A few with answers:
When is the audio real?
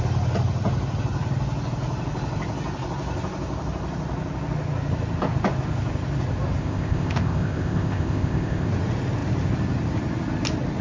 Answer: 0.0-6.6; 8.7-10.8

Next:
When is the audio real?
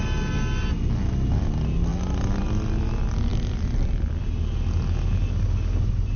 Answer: 0.0-6.2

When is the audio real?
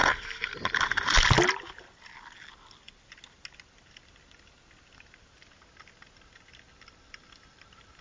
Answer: 0.0-8.0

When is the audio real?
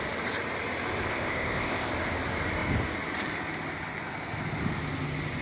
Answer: 0.0-1.1; 1.9-5.4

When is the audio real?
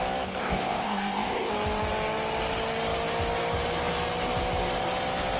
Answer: 0.0-0.4; 1.5-5.4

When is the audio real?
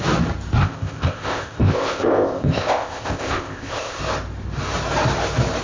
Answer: 0.0-0.6; 4.0-5.6